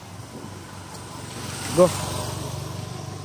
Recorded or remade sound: recorded